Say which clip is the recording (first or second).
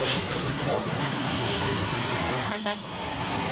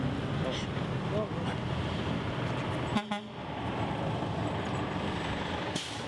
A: second